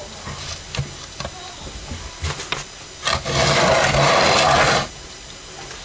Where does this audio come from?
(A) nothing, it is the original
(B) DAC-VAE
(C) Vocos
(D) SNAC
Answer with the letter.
A